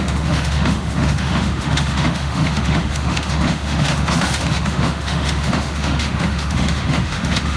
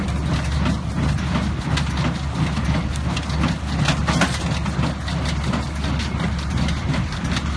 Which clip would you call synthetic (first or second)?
first